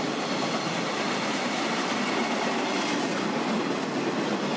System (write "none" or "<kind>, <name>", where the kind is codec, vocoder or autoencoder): none